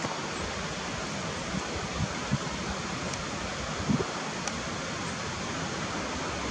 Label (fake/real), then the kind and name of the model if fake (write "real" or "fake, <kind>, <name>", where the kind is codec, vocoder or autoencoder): real